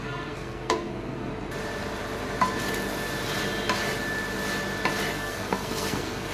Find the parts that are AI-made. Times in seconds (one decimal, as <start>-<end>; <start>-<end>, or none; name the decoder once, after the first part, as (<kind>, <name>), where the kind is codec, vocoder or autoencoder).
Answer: 0.0-1.3 (codec, SNAC); 5.1-6.3